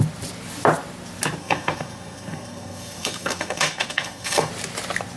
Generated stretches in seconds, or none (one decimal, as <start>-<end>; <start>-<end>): 1.4-4.5